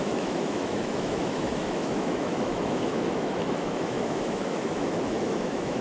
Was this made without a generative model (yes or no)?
no